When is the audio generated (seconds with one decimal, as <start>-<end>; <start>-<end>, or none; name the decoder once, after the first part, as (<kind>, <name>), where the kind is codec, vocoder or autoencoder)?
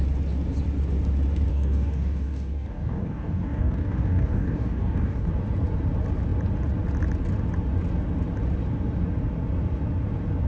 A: 1.5-5.3 (codec, DAC)